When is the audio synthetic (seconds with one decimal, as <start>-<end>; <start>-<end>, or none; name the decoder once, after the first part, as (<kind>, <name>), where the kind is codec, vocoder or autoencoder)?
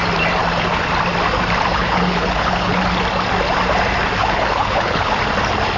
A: 1.7-2.8 (codec, HILCodec); 4.2-5.1